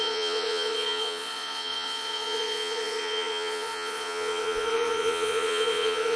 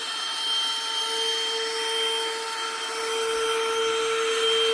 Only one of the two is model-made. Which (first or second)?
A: first